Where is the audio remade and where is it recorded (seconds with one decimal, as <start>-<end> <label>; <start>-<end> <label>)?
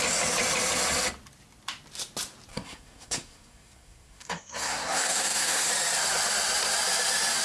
0.0-2.5 recorded; 2.5-5.7 remade; 5.7-7.4 recorded